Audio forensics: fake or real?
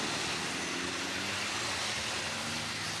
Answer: real